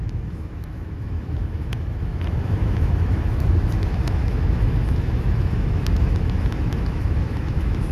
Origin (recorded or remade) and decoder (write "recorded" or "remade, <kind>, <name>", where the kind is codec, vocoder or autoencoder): remade, autoencoder, DAC-VAE